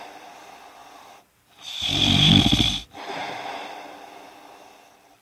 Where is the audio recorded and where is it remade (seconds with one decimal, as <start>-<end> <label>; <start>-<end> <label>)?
0.0-0.8 recorded; 0.8-2.3 remade; 2.3-3.2 recorded; 3.2-3.7 remade; 3.7-5.2 recorded